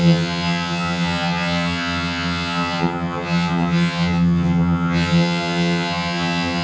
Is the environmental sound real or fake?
fake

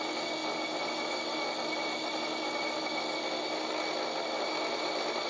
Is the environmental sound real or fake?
real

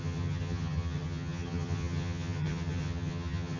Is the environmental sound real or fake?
fake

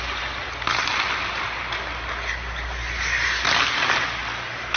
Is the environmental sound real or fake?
real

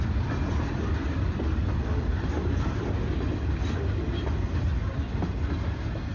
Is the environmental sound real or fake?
real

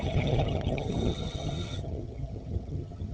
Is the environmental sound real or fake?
fake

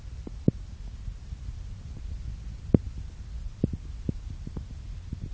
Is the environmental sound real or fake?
real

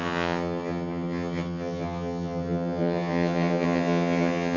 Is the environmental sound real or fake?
fake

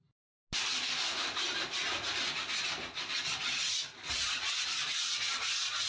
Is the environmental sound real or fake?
real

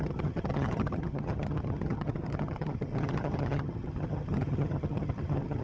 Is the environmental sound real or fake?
fake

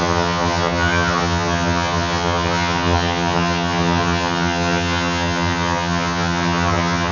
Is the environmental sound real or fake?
fake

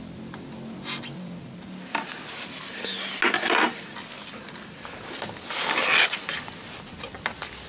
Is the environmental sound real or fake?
real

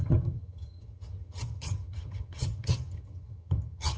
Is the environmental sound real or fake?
fake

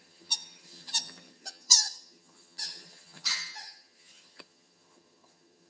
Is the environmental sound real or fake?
fake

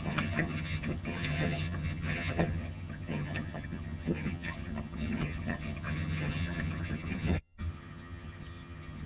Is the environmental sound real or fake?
fake